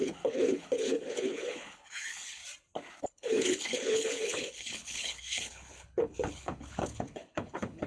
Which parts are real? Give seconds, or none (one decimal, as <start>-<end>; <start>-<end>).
2.4-3.0